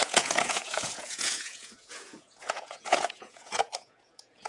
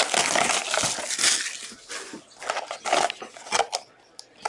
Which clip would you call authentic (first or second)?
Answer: second